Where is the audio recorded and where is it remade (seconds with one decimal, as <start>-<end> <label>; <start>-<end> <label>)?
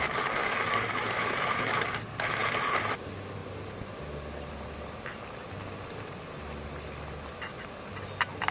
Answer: 0.0-0.4 recorded; 0.4-1.8 remade; 1.8-8.5 recorded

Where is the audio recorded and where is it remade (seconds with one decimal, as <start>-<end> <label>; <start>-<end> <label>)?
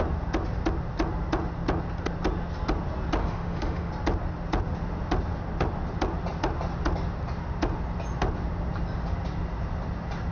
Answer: 0.0-3.2 recorded; 3.2-3.9 remade; 3.9-10.3 recorded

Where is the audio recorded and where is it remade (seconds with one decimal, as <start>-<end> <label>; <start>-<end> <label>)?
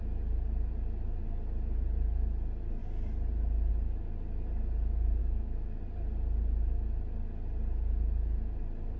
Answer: 0.0-5.2 recorded; 5.2-5.8 remade; 5.8-9.0 recorded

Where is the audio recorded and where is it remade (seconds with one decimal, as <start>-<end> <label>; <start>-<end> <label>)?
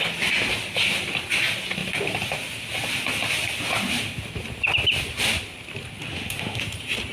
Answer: 0.0-6.1 recorded; 6.1-6.6 remade; 6.6-7.1 recorded